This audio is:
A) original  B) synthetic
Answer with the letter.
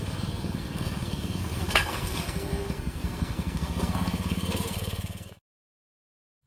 B